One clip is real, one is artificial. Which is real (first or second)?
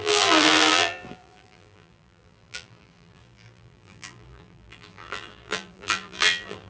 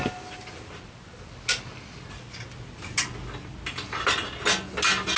second